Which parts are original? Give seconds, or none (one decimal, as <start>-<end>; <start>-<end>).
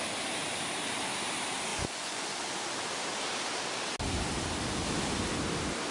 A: 0.0-1.7; 2.4-5.9